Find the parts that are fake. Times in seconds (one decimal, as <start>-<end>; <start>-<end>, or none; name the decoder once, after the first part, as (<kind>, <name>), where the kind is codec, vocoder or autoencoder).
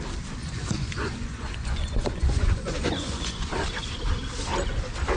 0.4-3.5 (vocoder, Vocos)